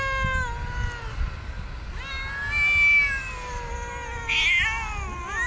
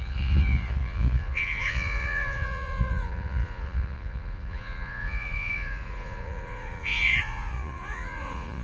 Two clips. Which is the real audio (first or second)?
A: first